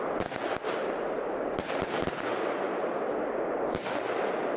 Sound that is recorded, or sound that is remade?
recorded